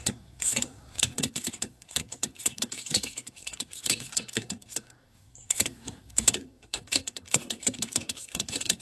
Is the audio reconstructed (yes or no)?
yes